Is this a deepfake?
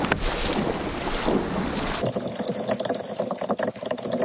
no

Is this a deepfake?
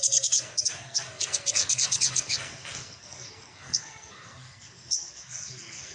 yes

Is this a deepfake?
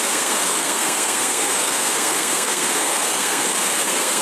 yes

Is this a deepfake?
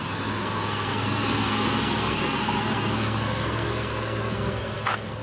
yes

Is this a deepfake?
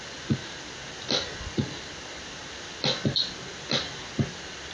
no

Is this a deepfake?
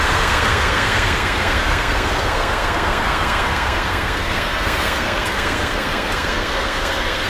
yes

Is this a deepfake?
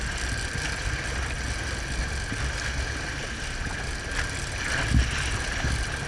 no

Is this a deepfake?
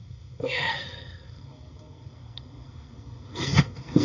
yes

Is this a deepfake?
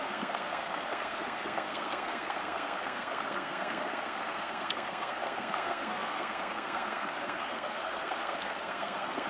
yes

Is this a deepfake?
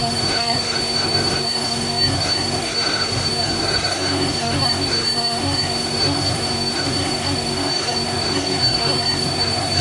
yes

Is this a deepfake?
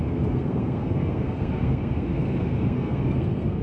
yes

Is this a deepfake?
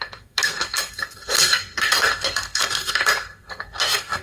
yes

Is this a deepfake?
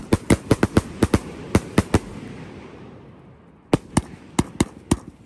no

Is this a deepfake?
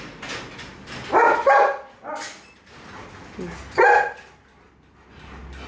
no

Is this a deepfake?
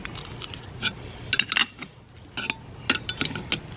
no